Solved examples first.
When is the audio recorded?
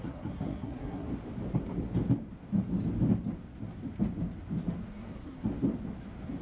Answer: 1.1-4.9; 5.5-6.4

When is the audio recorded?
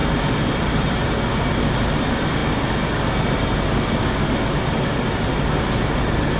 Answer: 0.0-6.4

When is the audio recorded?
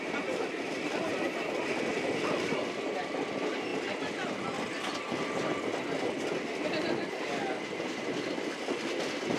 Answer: 0.0-9.4